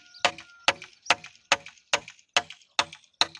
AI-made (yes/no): no